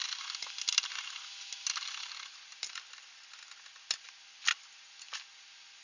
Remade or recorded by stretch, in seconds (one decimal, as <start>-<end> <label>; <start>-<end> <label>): 0.0-5.8 recorded